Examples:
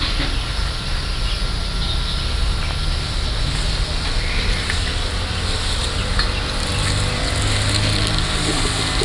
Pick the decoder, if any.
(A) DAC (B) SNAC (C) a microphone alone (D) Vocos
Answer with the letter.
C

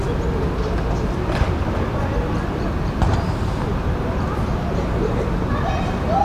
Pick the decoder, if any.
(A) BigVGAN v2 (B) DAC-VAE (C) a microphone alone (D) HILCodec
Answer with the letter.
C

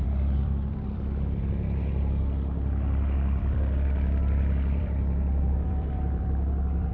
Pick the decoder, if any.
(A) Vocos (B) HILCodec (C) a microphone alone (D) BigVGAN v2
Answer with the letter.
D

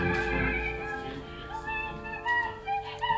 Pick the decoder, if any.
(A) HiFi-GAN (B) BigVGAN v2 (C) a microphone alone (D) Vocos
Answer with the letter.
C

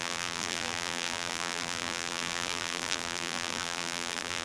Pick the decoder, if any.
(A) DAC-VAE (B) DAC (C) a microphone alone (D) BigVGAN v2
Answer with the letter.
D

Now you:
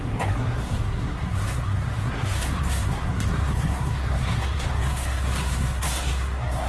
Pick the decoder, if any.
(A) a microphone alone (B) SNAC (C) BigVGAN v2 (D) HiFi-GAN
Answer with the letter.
B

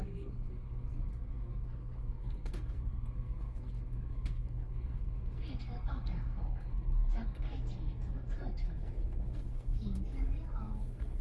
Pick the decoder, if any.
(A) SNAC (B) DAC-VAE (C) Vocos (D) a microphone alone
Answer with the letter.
A